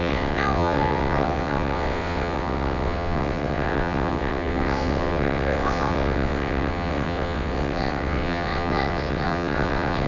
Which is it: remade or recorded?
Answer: remade